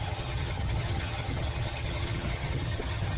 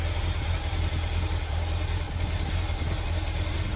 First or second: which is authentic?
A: second